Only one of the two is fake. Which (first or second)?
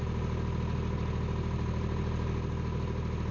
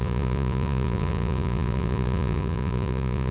second